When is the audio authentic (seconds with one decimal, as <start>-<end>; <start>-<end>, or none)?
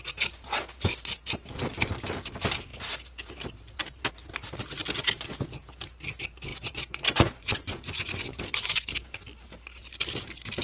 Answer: 0.0-6.5; 8.4-10.6